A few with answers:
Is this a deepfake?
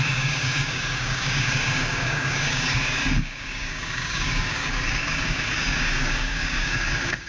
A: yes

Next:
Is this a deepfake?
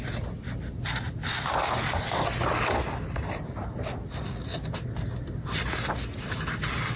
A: no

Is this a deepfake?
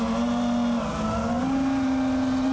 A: no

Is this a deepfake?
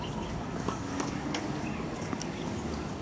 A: yes